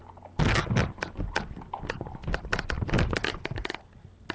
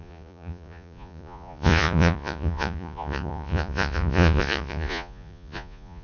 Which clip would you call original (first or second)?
first